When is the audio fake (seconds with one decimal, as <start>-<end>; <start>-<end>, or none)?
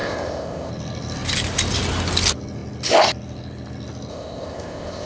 0.0-0.7; 4.1-5.1